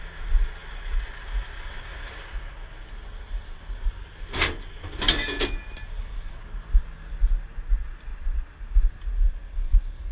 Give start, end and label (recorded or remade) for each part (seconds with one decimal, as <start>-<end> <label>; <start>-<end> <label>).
0.0-10.1 recorded